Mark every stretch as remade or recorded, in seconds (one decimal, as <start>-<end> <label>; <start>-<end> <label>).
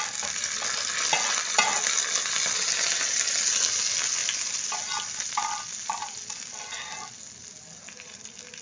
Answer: 0.0-8.6 recorded